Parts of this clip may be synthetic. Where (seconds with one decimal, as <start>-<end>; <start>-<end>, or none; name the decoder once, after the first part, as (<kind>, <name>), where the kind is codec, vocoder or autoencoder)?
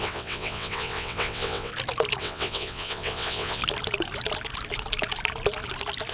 0.0-1.7 (vocoder, WaveNeXt); 2.2-3.6